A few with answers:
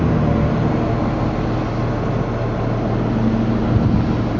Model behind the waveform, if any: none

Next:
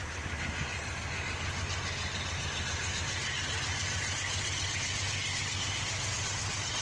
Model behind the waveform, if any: none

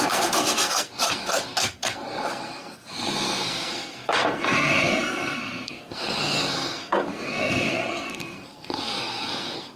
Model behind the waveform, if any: codec, SNAC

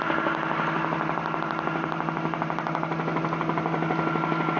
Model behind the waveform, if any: none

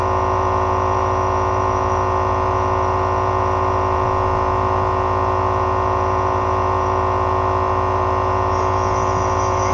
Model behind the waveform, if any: vocoder, Vocos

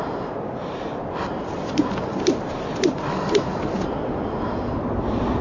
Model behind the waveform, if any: none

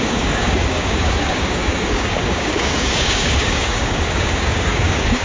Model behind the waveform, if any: codec, DAC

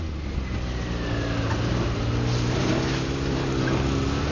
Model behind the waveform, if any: none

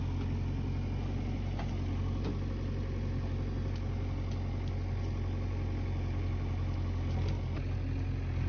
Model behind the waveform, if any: none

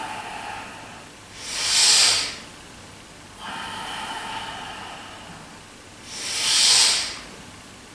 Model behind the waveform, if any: none